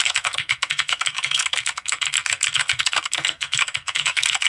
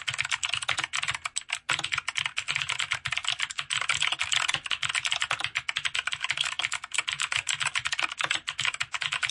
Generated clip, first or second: first